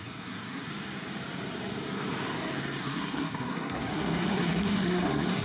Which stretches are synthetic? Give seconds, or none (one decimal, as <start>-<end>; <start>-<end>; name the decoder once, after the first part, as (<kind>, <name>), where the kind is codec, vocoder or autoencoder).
0.0-0.7 (codec, SNAC); 2.8-5.4